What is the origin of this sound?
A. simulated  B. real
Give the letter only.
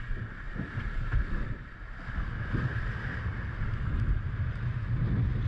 B